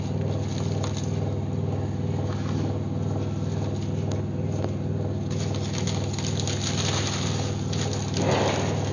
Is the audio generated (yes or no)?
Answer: no